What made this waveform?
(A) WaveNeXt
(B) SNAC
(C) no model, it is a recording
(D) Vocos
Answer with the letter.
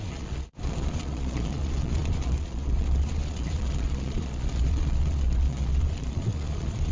D